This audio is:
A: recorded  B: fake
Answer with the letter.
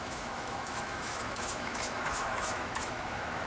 B